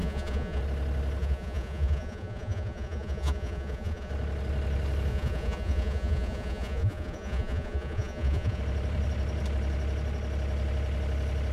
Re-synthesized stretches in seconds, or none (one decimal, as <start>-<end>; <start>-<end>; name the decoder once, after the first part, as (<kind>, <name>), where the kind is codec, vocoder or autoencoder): 0.0-0.6 (vocoder, Vocos); 1.2-4.1; 5.1-8.6